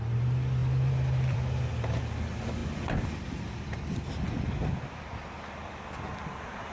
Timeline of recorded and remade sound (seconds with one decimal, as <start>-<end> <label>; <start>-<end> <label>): 0.0-0.6 recorded; 0.6-1.6 remade; 1.6-6.7 recorded